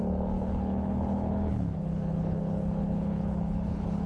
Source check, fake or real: fake